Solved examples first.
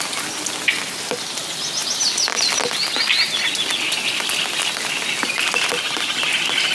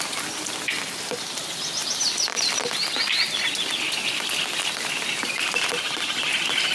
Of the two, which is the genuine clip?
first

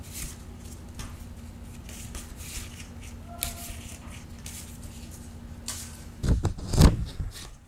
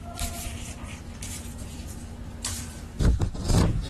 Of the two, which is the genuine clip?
first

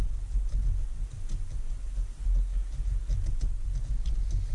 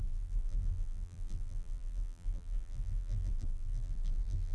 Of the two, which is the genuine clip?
first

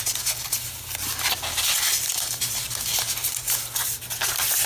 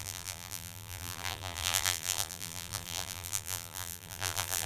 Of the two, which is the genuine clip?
first